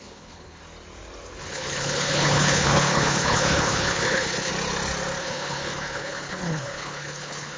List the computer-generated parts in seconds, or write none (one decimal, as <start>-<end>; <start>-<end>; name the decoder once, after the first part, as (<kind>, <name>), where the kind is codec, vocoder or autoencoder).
0.0-0.6 (codec, HILCodec); 1.4-4.5; 5.2-7.6